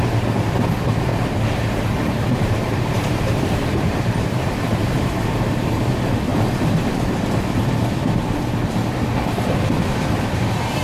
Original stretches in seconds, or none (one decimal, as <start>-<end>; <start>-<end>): 0.0-1.1; 5.7-10.8